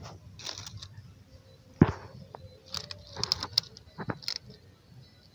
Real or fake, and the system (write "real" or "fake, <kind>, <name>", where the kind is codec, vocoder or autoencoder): real